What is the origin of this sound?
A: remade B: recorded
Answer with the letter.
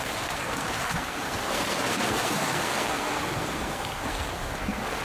A